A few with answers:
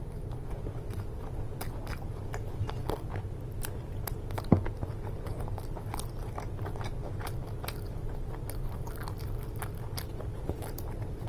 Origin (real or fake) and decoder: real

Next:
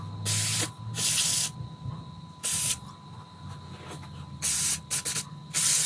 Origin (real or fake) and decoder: real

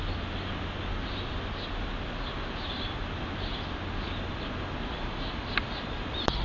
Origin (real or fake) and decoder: real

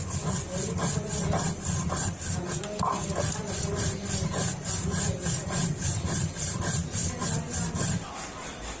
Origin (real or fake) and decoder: real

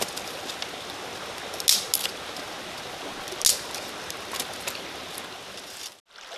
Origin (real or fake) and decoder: real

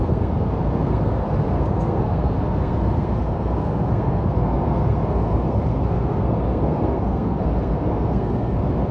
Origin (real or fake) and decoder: fake, codec, SNAC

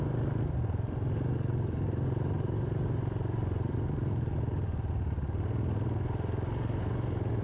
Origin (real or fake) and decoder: real